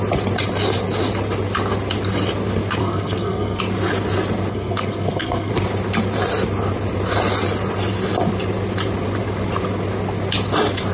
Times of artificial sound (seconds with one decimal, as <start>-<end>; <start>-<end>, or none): 2.8-3.6; 4.5-5.5